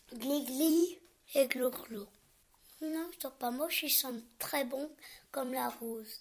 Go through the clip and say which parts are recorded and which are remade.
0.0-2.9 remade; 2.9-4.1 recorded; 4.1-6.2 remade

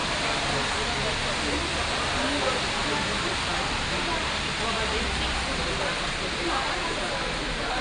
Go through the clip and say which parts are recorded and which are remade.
0.0-7.8 recorded

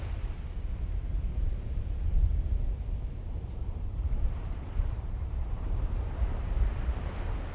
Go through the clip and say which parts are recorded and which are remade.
0.0-1.3 recorded; 1.3-1.8 remade; 1.8-2.3 recorded; 2.3-6.2 remade; 6.2-7.5 recorded

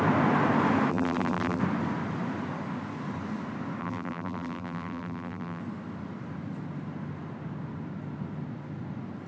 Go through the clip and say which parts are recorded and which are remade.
0.0-0.9 recorded; 0.9-1.6 remade; 1.6-3.8 recorded; 3.8-5.6 remade; 5.6-9.3 recorded